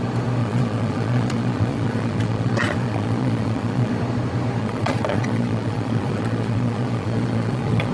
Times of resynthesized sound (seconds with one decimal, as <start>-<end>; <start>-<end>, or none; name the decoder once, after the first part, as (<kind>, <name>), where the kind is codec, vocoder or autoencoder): 0.4-3.9 (vocoder, Vocos); 4.6-7.9